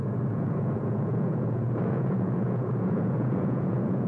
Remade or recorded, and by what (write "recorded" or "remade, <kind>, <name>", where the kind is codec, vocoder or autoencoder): remade, vocoder, Vocos